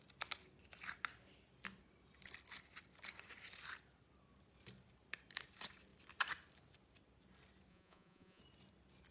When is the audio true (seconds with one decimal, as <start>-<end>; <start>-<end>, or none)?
0.0-7.7; 8.4-9.1